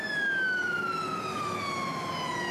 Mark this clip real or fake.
real